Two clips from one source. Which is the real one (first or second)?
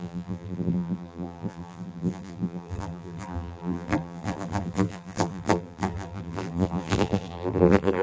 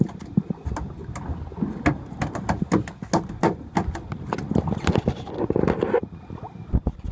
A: second